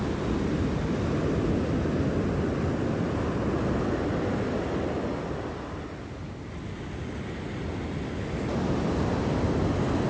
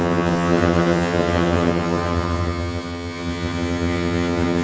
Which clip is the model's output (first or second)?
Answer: second